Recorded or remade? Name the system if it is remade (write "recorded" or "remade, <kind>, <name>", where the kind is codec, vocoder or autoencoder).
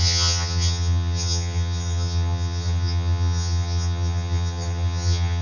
remade, vocoder, HiFi-GAN